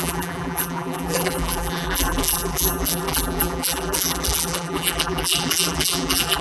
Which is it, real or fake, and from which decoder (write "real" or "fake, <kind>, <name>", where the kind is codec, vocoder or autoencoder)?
fake, vocoder, BigVGAN v2